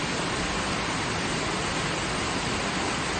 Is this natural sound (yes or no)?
yes